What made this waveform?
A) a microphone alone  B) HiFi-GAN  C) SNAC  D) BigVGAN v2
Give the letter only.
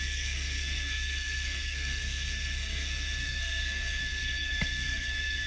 C